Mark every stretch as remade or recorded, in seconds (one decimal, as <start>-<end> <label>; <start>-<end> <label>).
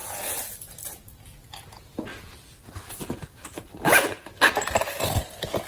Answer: 0.0-1.5 remade; 1.5-2.1 recorded; 2.1-4.4 remade; 4.4-5.7 recorded